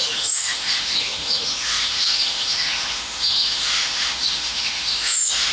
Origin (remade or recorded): remade